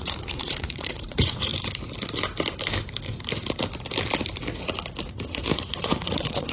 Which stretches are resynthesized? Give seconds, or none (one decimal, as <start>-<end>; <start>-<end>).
0.0-1.5; 5.0-6.5